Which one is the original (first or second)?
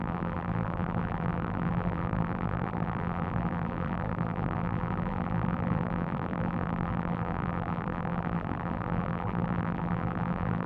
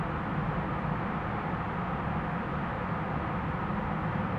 second